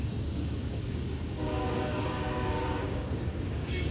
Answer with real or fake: fake